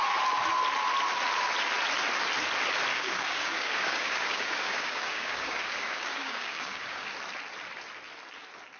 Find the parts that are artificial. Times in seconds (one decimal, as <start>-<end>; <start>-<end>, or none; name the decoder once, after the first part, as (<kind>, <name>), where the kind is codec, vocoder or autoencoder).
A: 2.9-7.1 (codec, DAC)